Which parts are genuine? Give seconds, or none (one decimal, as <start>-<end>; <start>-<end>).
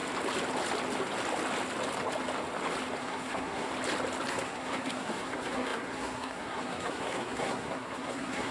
0.0-3.0; 3.7-4.3